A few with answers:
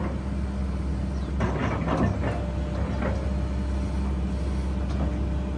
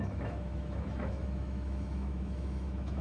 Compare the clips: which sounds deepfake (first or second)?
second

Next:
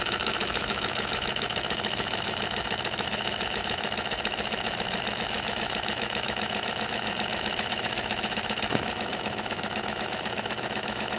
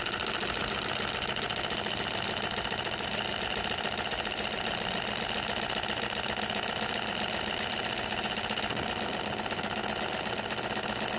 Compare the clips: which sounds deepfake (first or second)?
first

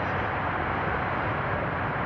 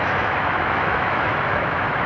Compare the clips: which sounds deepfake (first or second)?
second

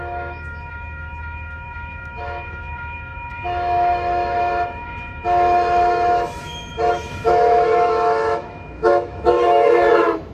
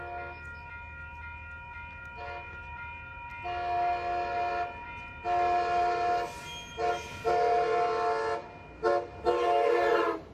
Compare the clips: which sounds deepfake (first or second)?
first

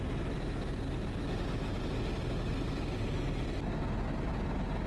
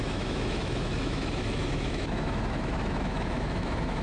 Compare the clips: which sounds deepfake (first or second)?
second